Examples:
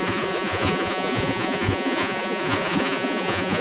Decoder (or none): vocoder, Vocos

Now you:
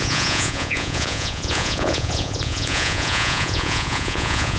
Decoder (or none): vocoder, Vocos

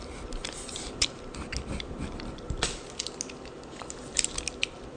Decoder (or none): none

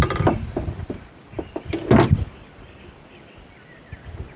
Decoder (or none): none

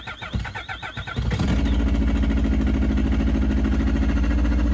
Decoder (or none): none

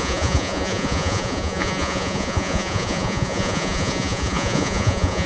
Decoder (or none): vocoder, Vocos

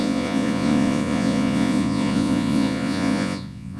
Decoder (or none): vocoder, Vocos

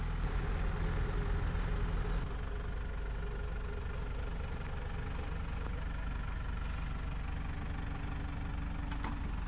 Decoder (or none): none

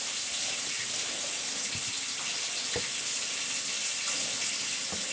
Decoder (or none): none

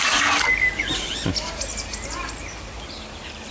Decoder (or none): none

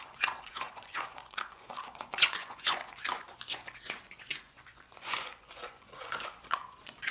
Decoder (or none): vocoder, Vocos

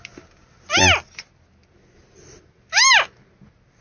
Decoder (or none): none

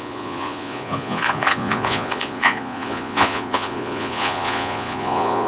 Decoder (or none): vocoder, Vocos